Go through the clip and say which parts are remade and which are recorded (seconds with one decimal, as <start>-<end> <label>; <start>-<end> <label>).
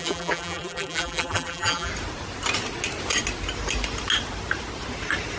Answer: 0.0-1.9 remade; 1.9-5.4 recorded